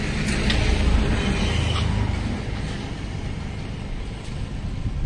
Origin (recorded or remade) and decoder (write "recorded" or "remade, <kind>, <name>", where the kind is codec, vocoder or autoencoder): recorded